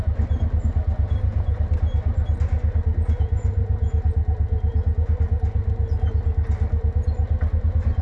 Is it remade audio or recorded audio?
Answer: recorded